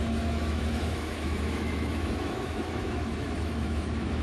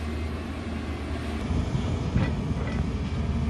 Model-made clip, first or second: first